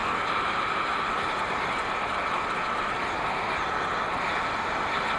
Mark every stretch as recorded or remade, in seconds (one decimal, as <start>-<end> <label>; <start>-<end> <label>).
0.0-3.1 remade; 3.1-5.2 recorded